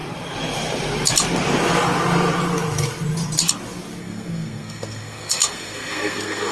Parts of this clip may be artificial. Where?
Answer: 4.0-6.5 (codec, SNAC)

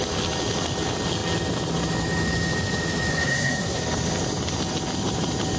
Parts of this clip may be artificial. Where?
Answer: 3.1-3.8 (codec, SNAC)

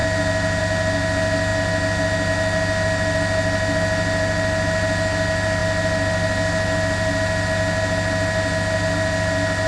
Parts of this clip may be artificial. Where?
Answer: none

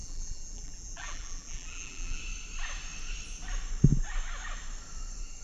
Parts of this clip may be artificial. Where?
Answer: 0.0-2.2 (vocoder, BigVGAN v2)

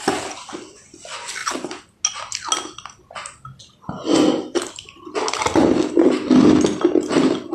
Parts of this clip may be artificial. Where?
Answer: none

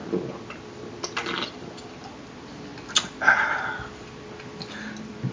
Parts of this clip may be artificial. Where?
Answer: none

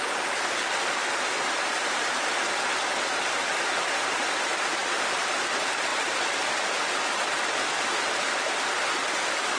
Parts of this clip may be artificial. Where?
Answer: 4.8-5.4 (vocoder, BigVGAN v2); 5.9-8.1